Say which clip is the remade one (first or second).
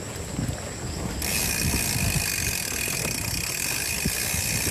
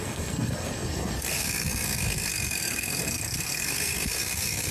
second